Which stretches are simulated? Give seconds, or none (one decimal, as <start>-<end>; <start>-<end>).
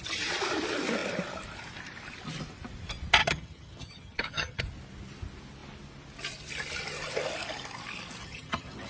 3.2-4.6; 8.2-8.9